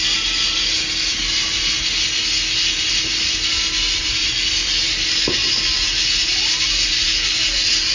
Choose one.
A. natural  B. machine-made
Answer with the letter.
A